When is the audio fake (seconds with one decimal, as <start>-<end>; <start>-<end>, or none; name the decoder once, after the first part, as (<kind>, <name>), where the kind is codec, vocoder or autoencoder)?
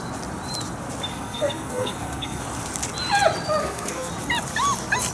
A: 1.1-2.4 (codec, SNAC); 3.6-4.1